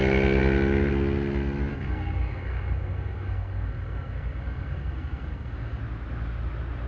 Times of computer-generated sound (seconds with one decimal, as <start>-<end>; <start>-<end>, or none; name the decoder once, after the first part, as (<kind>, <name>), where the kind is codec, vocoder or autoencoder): 1.7-5.8 (codec, SNAC)